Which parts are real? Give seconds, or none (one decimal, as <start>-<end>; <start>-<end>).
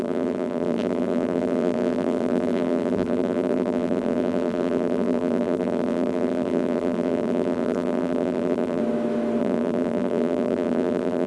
8.8-9.4